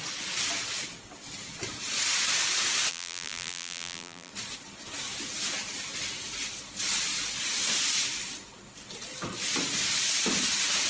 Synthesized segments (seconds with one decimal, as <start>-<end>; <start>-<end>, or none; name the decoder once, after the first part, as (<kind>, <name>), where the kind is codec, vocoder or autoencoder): 2.9-4.3 (vocoder, BigVGAN v2)